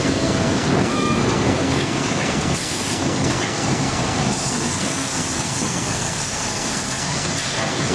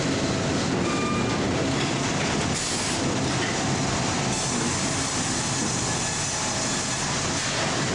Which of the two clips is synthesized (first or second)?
first